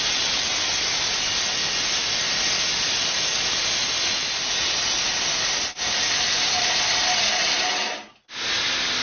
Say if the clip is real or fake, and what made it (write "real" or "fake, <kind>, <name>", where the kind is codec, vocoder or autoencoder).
real